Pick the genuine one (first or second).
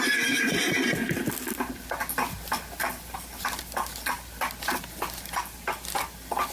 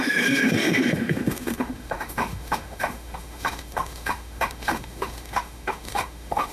first